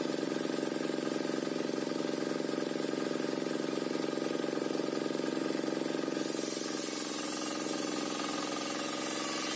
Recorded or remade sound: recorded